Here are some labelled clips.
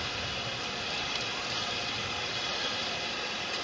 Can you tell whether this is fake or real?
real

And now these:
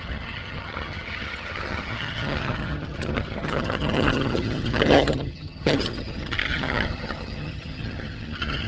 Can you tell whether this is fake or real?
fake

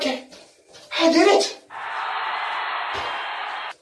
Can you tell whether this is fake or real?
real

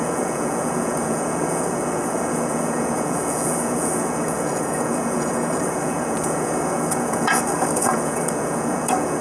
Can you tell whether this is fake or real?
fake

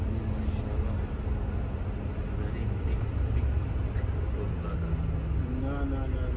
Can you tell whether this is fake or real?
real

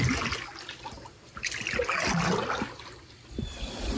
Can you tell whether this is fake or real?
real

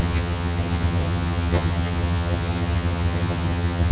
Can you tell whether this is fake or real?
fake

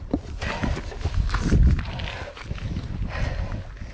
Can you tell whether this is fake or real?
real